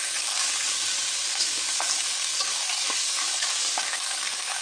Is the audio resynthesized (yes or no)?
yes